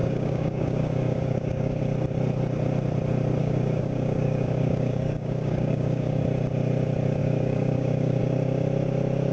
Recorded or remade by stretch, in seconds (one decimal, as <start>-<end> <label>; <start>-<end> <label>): 0.0-1.8 remade; 1.8-3.4 recorded; 3.4-6.2 remade; 6.2-7.2 recorded; 7.2-8.2 remade; 8.2-9.3 recorded